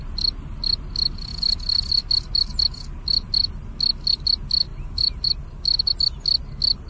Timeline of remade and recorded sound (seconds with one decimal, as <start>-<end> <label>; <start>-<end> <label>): 0.0-4.7 recorded; 4.7-5.3 remade; 5.3-6.9 recorded